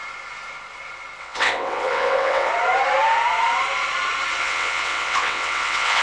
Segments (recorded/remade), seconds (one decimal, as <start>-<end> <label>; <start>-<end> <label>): 0.0-1.2 recorded; 1.2-2.5 remade; 2.5-4.4 recorded; 4.4-6.0 remade